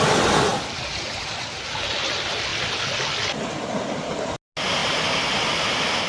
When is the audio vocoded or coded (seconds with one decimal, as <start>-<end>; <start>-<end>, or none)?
2.5-4.1

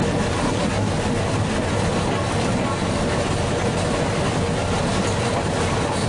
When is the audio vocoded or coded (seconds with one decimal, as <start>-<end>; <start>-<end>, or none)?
0.4-0.9

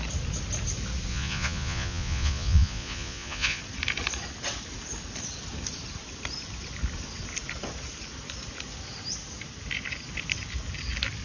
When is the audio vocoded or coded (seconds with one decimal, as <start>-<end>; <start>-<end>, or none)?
1.1-3.6